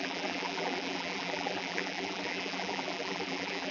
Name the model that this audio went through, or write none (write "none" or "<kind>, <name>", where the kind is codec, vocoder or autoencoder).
vocoder, BigVGAN v2